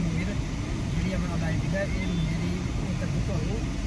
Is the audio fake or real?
real